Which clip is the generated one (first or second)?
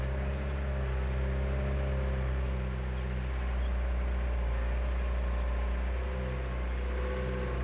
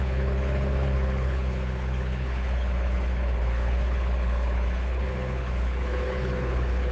second